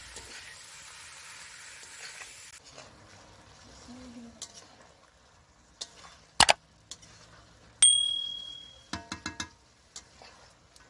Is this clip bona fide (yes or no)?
yes